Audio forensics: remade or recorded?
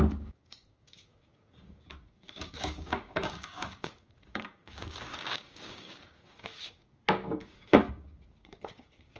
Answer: remade